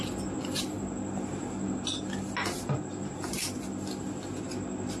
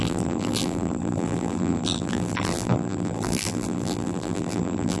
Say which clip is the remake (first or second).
second